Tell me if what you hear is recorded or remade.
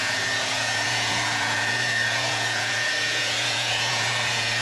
remade